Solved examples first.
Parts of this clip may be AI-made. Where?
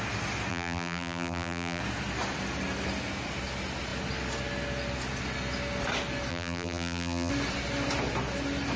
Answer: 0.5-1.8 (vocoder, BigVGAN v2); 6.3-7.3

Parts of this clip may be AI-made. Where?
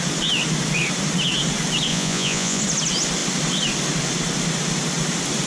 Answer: 1.9-2.6 (vocoder, Vocos)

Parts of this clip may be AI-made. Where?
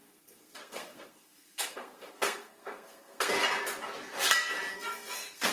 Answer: 0.0-3.3 (codec, SNAC); 4.7-5.5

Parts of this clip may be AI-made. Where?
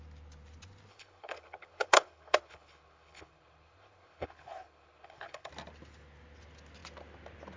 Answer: 0.9-5.5 (codec, HILCodec)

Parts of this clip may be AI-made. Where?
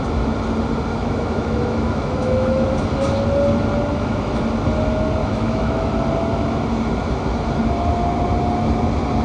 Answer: 0.9-2.7 (autoencoder, DAC-VAE); 3.9-4.4; 5.2-5.9